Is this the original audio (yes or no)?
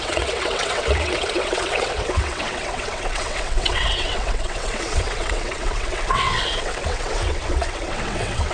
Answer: no